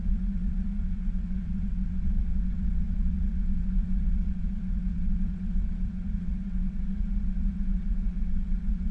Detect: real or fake fake